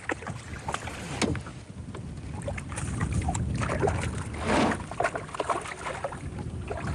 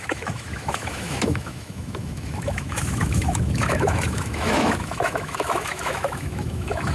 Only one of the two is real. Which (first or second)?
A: first